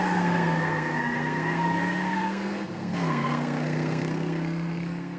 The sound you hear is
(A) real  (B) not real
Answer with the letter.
B